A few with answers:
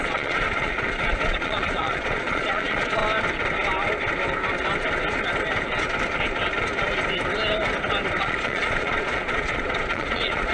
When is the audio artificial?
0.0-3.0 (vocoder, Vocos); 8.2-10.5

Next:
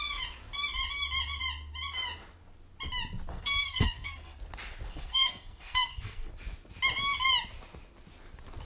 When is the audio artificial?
3.3-4.4 (codec, SNAC); 4.9-6.3

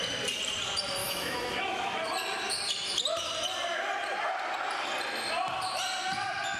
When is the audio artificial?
1.0-2.0 (autoencoder, DAC-VAE)

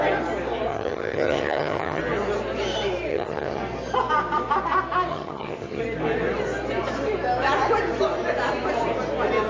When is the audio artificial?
0.7-2.0 (vocoder, HiFi-GAN); 3.1-3.6; 5.1-5.8

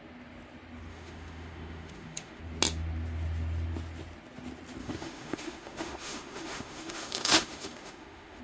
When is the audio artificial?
0.9-2.4 (autoencoder, DAC-VAE); 4.8-8.4

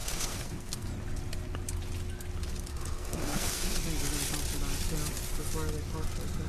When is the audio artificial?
0.0-0.9 (codec, SNAC); 2.7-3.8

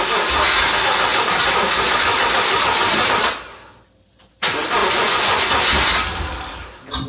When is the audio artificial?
4.8-5.5 (vocoder, Vocos)

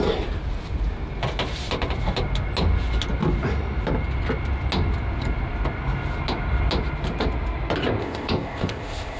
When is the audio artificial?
8.0-9.2 (codec, ZipCodec)